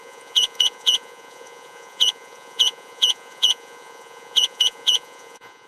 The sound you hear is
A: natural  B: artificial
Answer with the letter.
B